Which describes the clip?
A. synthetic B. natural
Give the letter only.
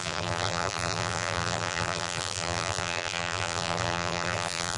A